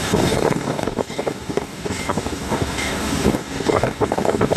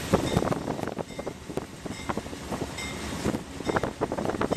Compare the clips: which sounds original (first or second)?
second